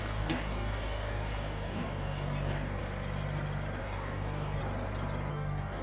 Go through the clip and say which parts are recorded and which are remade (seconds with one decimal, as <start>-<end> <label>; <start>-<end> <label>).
0.0-2.8 remade; 2.8-3.8 recorded; 3.8-4.6 remade; 4.6-5.3 recorded; 5.3-5.8 remade